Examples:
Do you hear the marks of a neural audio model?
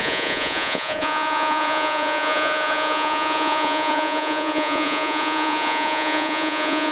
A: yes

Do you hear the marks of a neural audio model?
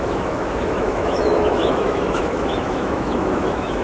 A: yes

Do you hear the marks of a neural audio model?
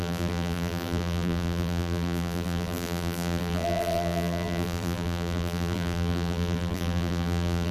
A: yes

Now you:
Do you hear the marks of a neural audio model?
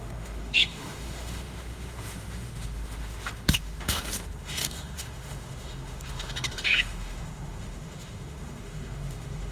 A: yes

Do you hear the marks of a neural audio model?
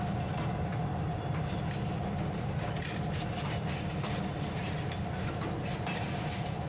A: no